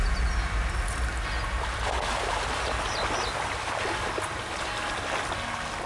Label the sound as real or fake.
real